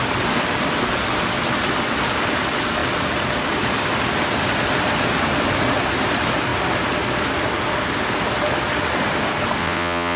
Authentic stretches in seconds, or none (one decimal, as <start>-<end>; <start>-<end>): 0.0-9.6